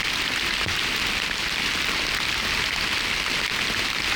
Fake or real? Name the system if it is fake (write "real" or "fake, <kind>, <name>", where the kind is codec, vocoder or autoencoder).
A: real